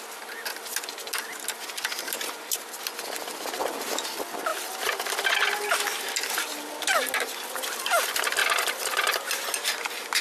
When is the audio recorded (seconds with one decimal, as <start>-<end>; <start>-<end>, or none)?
0.0-8.4; 9.2-10.2